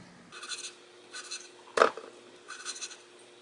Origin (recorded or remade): recorded